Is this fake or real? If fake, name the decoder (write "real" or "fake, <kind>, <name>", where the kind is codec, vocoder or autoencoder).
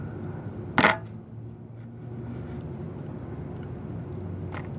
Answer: real